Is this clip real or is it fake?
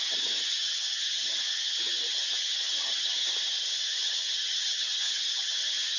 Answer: fake